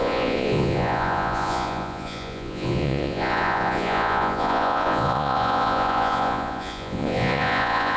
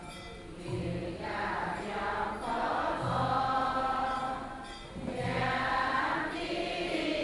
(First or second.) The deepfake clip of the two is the first